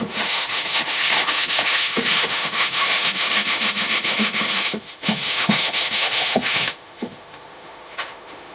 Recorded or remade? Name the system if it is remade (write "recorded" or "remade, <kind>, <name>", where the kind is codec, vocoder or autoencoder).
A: remade, autoencoder, DAC-VAE